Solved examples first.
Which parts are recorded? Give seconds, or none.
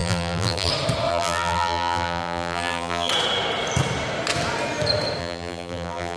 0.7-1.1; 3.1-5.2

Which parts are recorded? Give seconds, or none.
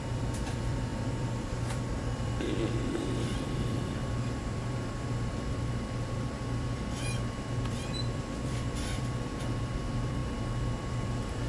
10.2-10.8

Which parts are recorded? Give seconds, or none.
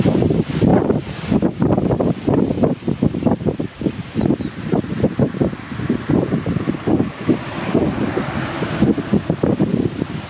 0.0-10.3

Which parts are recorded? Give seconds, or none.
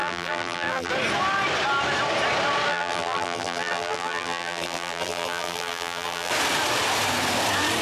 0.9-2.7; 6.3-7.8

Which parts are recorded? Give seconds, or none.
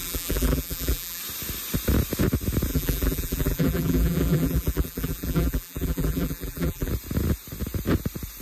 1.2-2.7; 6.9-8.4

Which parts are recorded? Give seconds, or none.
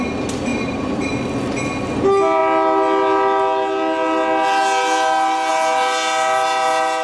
0.0-0.5; 1.1-7.0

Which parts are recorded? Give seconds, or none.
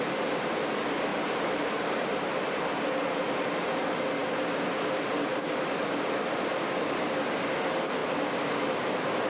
0.0-1.1; 2.7-9.3